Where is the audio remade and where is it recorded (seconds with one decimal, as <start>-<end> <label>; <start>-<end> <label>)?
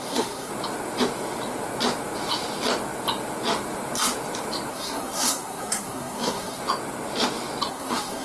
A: 0.0-0.5 remade; 0.5-4.7 recorded; 4.7-6.6 remade; 6.6-7.7 recorded; 7.7-8.2 remade